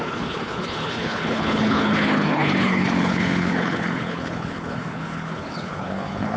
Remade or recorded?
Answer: remade